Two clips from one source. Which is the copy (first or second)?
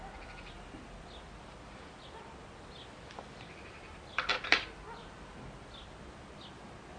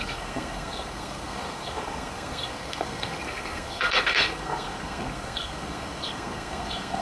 second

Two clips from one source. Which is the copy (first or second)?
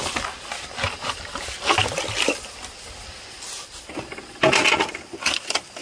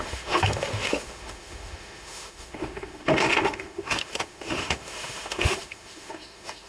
second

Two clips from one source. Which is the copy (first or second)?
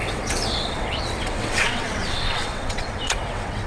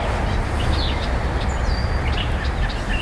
first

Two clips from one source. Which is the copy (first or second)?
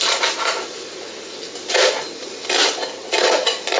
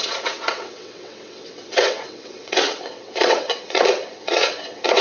second